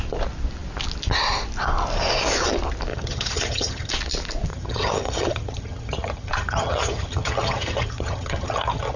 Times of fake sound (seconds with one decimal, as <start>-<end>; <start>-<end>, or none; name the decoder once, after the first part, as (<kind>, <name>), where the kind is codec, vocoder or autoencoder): 2.9-3.9 (vocoder, HiFi-GAN); 4.5-9.0